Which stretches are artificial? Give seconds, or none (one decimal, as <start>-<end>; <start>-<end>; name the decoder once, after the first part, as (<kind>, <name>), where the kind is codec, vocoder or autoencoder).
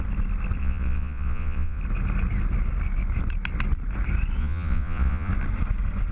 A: 0.6-1.8 (vocoder, Vocos); 4.4-5.3